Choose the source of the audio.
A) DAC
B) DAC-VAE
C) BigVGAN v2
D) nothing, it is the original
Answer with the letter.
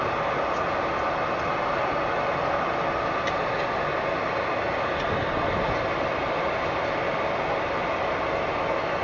D